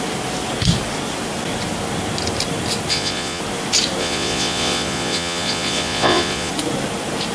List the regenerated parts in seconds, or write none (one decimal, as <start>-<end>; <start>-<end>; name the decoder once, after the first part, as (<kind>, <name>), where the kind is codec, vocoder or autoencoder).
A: 2.9-3.4 (vocoder, Vocos); 4.0-6.5